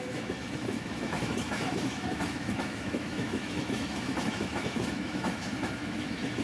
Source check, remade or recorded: remade